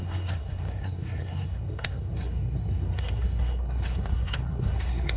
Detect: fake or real fake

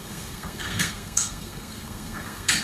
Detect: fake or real fake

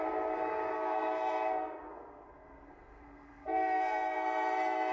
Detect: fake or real fake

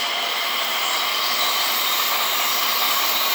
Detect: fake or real real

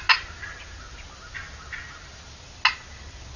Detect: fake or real real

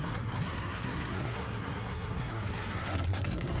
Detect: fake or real fake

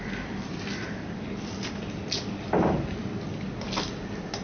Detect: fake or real real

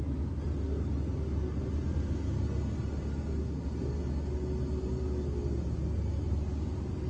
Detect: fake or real real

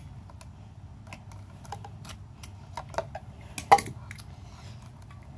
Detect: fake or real real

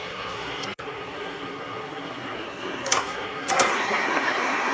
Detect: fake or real fake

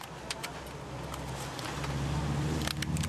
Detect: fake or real real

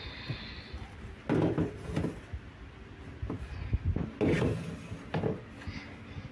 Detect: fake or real real